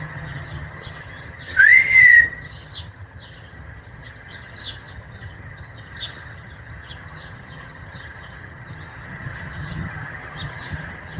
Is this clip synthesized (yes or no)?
yes